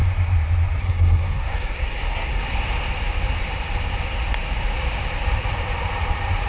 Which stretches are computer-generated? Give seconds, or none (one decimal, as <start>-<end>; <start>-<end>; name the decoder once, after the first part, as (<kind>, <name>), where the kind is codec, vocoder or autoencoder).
0.8-2.4 (codec, SNAC)